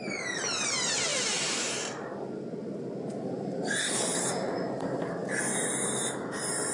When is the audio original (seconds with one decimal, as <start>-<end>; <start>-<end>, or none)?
0.0-1.1; 2.2-4.1; 4.6-6.7

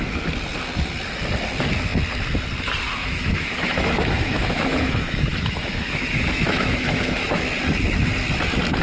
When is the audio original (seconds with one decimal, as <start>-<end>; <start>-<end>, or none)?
0.0-3.0; 7.4-8.8

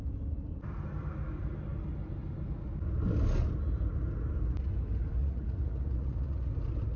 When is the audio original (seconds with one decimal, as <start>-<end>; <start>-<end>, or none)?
0.0-5.2; 6.5-7.0

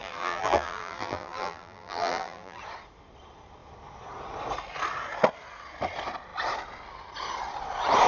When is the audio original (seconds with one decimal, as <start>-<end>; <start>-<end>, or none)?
2.6-8.1

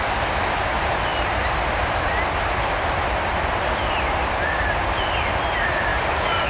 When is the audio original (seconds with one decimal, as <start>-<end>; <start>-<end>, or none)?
0.0-6.5

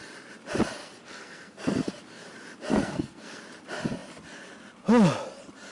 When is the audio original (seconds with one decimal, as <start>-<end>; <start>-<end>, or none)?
0.0-0.8; 2.0-2.7; 3.4-5.7

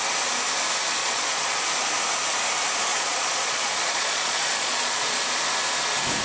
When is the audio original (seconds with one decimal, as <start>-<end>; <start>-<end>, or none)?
0.0-1.0; 1.6-2.9; 5.0-6.2